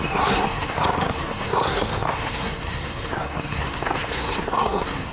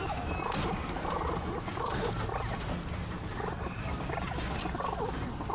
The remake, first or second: first